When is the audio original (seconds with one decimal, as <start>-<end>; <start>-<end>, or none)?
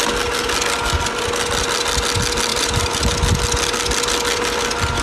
0.0-2.5; 3.1-5.0